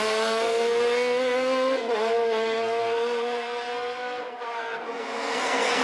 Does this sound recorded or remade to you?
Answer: remade